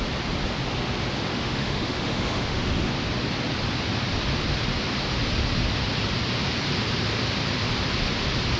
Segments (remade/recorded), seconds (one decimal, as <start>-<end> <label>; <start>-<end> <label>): 0.0-1.3 recorded; 1.3-2.9 remade; 2.9-8.6 recorded